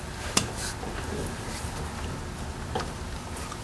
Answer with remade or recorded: recorded